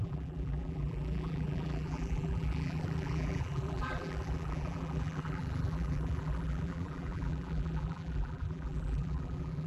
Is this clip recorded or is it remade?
remade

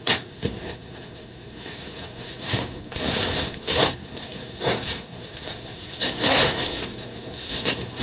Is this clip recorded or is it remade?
remade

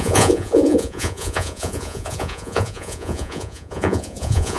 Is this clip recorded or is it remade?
remade